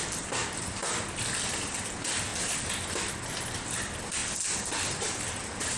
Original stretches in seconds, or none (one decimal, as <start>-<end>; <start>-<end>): 0.0-5.8